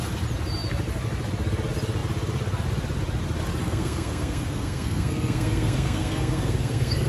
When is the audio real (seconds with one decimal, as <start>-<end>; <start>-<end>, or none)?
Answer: 0.0-3.6